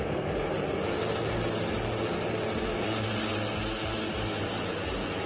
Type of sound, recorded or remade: recorded